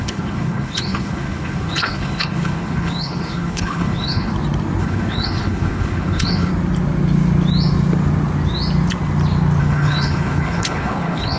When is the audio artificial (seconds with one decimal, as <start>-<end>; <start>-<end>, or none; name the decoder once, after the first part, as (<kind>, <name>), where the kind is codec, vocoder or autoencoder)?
0.0-4.3 (codec, HILCodec); 4.8-6.5; 9.6-11.4